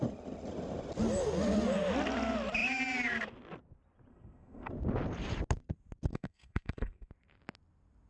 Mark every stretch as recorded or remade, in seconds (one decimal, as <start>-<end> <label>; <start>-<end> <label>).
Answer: 0.0-4.1 recorded; 4.1-4.7 remade; 4.7-6.1 recorded; 6.1-7.1 remade; 7.1-8.1 recorded